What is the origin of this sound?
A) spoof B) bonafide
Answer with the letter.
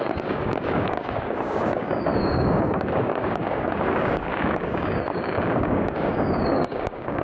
A